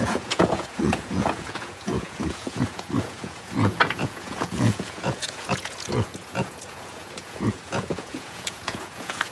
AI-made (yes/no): yes